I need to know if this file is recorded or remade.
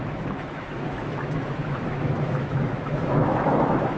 remade